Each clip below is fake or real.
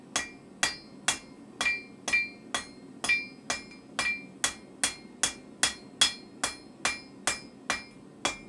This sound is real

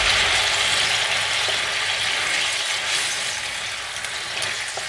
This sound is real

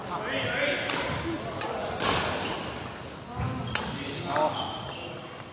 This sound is real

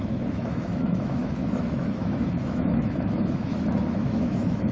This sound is fake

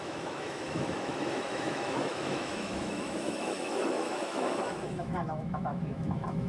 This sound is fake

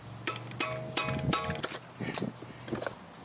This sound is real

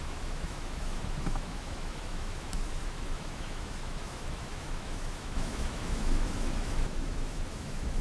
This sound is fake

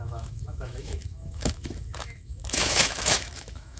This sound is fake